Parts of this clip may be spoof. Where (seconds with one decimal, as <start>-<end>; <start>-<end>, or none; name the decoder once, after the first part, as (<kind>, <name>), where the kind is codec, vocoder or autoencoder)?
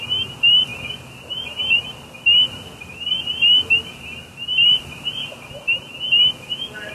none